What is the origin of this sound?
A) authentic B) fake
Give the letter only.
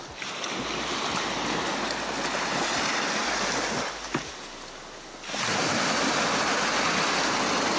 A